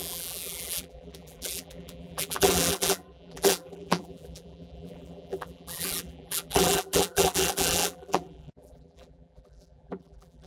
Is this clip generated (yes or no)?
yes